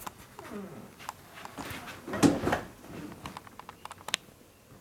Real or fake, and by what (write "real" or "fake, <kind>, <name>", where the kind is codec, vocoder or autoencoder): real